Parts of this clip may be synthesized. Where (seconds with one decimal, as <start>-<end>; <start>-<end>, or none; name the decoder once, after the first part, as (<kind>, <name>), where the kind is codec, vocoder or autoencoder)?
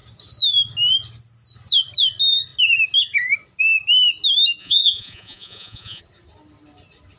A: 4.6-6.0 (vocoder, Vocos)